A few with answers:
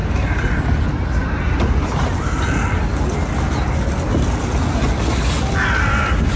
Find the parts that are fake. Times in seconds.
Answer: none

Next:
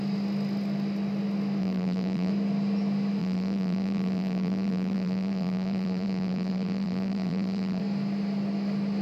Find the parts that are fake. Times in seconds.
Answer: 1.6-2.3; 3.2-7.8

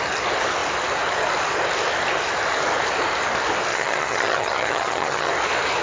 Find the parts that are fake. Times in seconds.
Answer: 3.7-5.3

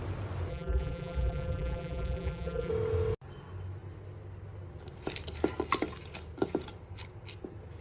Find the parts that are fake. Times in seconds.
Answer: 0.5-2.7